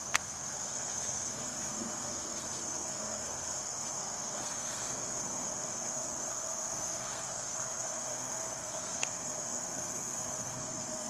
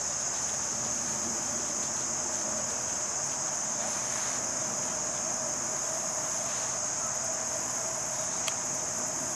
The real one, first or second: second